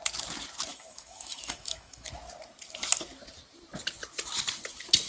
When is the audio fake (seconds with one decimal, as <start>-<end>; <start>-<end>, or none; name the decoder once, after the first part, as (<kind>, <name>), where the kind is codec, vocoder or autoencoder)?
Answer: 0.7-2.1 (autoencoder, DAC-VAE)